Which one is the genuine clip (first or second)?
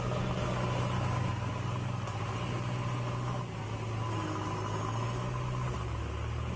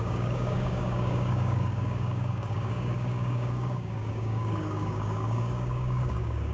first